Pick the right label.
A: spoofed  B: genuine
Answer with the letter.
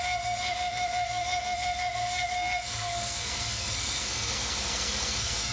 A